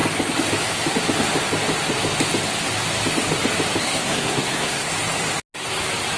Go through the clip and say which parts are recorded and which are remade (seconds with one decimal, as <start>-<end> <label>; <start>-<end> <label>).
0.0-3.8 recorded; 3.8-4.9 remade; 4.9-6.2 recorded